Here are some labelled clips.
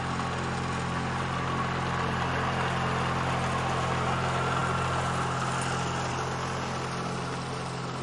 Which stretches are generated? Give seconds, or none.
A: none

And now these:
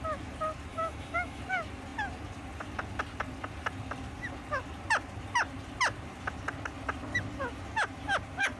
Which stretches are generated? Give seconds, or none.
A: 0.7-1.4

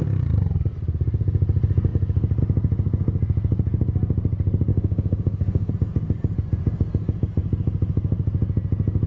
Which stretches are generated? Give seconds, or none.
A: 4.7-5.7

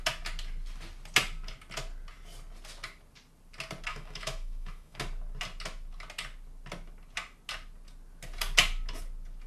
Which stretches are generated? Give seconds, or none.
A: 3.9-5.0

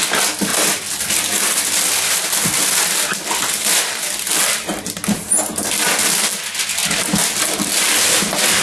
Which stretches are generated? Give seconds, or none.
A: none

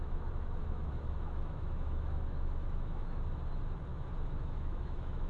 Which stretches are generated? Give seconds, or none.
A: 0.0-3.2; 3.9-5.3

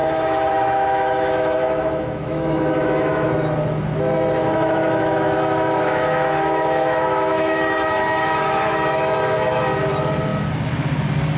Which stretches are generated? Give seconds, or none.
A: 0.0-3.3; 4.4-9.6

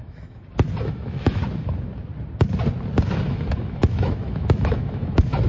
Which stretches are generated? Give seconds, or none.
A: 0.0-1.4; 3.2-5.5